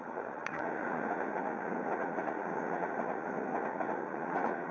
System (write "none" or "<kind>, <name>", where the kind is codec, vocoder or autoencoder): vocoder, Vocos